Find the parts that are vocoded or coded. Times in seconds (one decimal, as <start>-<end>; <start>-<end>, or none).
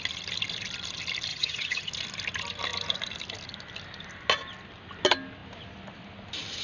1.3-1.9